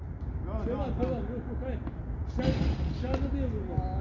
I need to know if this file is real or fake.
real